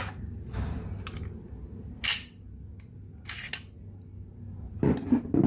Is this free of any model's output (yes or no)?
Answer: yes